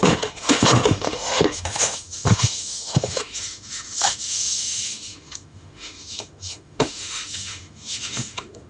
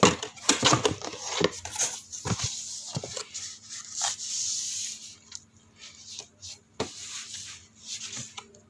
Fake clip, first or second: first